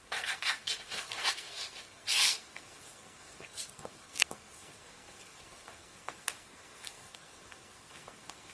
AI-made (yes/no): yes